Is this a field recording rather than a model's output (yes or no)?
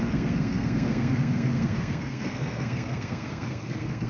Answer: no